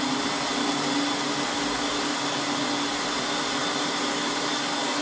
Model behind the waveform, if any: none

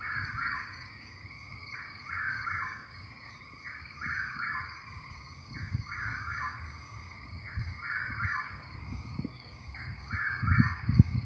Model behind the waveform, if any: codec, DAC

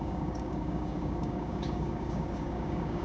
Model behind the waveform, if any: codec, DAC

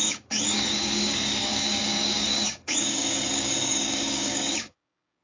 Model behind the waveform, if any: codec, DAC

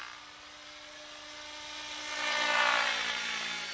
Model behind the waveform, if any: none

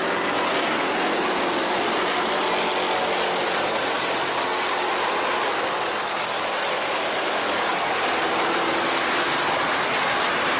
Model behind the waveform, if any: none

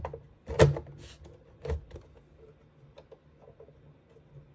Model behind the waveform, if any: none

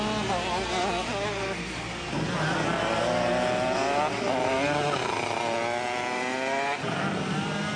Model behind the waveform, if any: none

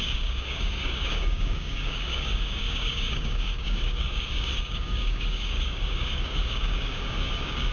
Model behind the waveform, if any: codec, DAC